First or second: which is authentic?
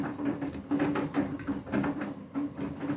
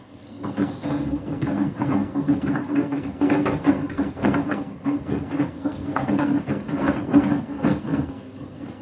first